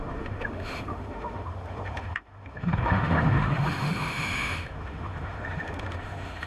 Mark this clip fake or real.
fake